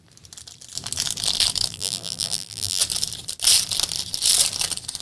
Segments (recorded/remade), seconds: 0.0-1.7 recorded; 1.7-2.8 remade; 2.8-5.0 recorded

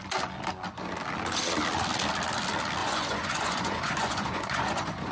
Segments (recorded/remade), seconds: 0.0-2.8 recorded; 2.8-5.1 remade

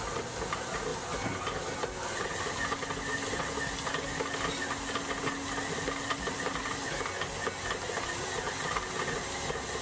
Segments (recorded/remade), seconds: 0.0-9.8 recorded

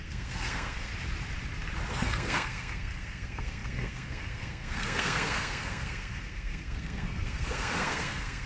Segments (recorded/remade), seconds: 0.0-0.9 remade; 0.9-1.9 recorded; 1.9-8.5 remade

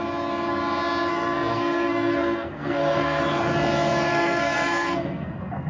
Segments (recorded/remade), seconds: 0.0-1.1 recorded; 1.1-3.2 remade; 3.2-4.1 recorded; 4.1-5.7 remade

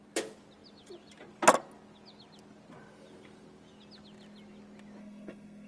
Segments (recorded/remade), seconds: 0.0-5.0 recorded; 5.0-5.7 remade

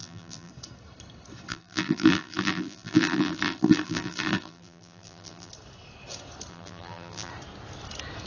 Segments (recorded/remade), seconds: 0.0-0.5 remade; 0.5-1.5 recorded; 1.5-5.5 remade; 5.5-6.5 recorded; 6.5-7.3 remade; 7.3-8.3 recorded

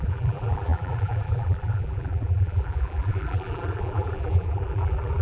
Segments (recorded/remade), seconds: 0.0-5.2 remade